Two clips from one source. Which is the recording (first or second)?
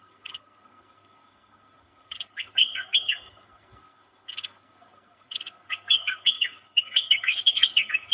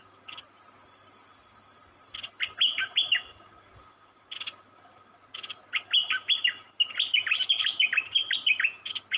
second